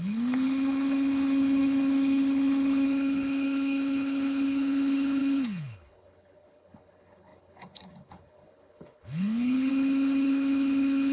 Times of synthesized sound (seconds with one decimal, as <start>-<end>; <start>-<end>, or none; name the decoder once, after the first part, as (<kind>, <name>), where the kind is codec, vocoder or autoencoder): 0.0-11.1 (codec, HILCodec)